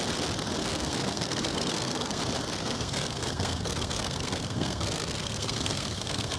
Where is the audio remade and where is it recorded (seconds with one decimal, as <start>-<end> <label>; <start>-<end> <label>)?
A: 0.0-0.6 recorded; 0.6-2.2 remade; 2.2-2.6 recorded; 2.6-6.4 remade